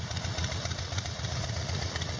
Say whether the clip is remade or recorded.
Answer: remade